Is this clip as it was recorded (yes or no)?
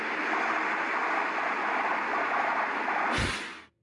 yes